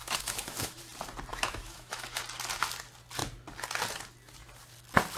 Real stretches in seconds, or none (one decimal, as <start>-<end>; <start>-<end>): 0.8-1.3; 2.2-5.2